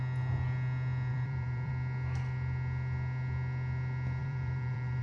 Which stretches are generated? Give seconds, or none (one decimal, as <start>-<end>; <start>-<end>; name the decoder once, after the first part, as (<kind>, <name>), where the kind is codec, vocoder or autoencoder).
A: 1.1-1.7 (vocoder, BigVGAN v2); 4.2-5.0